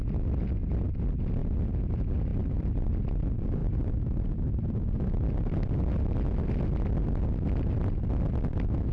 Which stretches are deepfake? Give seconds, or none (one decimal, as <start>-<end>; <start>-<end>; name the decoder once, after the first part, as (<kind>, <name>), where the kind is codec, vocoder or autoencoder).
1.4-1.9 (vocoder, BigVGAN v2); 2.3-2.9; 3.6-5.0

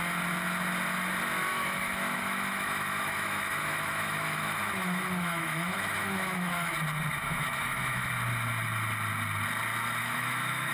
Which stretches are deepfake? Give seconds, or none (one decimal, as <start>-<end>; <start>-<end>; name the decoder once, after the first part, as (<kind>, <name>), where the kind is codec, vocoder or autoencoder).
1.5-6.7 (autoencoder, DAC-VAE); 7.2-8.1; 10.0-10.7

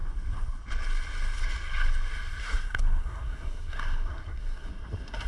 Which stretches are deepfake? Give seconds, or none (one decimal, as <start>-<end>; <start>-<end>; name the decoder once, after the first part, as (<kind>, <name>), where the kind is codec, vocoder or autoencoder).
2.4-4.7 (codec, SNAC)

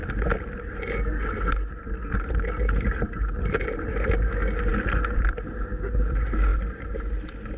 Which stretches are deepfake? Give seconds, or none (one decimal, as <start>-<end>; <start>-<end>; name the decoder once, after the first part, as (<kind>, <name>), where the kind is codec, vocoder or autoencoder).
none

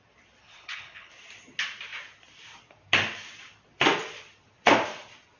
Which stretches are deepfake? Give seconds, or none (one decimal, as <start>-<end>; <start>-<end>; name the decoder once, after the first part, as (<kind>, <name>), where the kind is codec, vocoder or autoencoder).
0.4-1.1 (codec, HILCodec)